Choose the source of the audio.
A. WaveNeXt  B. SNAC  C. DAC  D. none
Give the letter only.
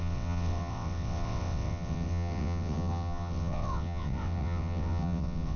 A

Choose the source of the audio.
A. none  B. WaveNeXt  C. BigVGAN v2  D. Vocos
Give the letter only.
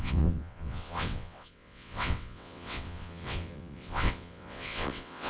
B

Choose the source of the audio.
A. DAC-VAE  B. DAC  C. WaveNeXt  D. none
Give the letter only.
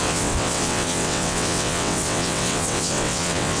C